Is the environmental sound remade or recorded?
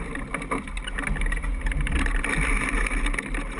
recorded